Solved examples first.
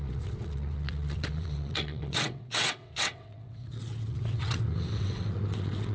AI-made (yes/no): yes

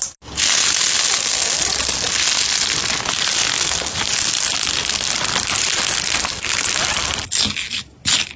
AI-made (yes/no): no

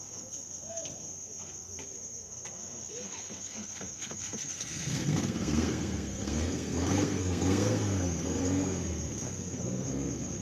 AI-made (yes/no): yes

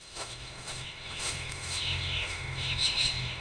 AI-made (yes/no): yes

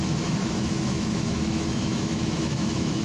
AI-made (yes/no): yes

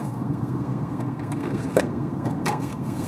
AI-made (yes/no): yes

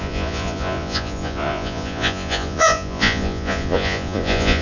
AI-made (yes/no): yes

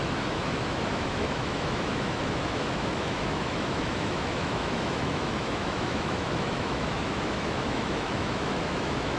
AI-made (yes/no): yes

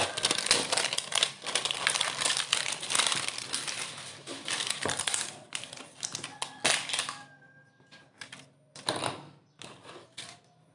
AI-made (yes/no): no